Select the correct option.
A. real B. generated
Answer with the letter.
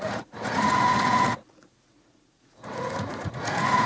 B